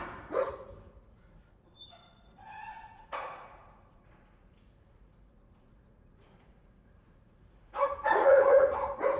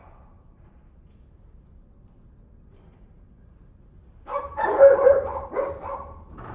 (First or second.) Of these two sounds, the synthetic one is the first